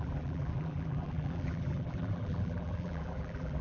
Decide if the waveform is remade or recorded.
remade